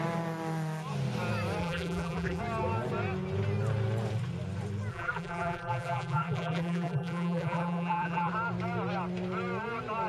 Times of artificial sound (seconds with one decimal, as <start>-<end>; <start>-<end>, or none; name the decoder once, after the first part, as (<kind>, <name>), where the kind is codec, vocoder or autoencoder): 1.6-2.4 (vocoder, BigVGAN v2); 4.9-8.3